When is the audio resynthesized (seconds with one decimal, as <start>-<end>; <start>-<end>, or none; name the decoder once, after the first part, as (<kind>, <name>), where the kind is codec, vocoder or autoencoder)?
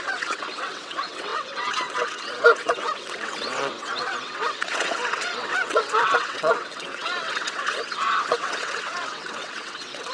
0.0-10.1 (vocoder, WaveNeXt)